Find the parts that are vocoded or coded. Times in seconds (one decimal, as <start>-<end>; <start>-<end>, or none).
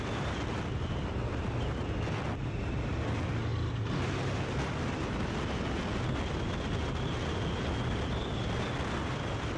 none